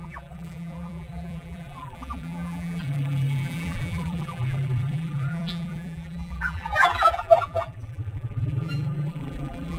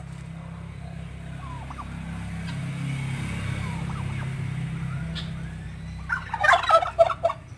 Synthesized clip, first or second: first